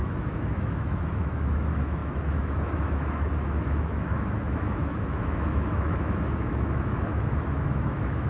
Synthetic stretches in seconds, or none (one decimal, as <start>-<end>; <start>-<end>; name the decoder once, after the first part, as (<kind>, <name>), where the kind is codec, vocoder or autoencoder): 0.0-8.3 (autoencoder, DAC-VAE)